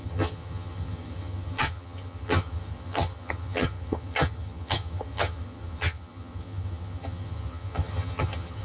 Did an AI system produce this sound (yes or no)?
yes